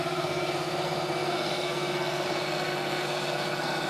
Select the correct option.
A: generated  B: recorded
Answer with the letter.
A